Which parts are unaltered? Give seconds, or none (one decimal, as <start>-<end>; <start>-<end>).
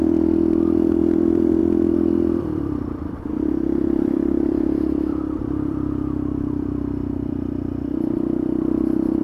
none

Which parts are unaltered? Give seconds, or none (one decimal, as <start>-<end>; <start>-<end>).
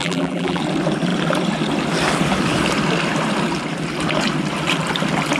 0.6-5.4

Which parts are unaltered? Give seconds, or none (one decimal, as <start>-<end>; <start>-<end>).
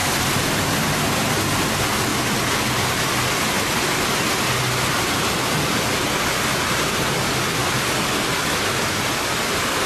0.0-7.6; 8.1-9.9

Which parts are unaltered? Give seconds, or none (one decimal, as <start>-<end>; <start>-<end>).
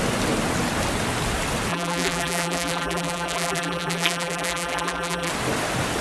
0.0-1.7; 5.3-6.0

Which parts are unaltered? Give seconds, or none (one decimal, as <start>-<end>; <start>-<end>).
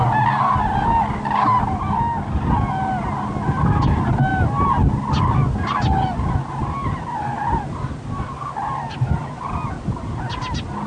0.0-10.9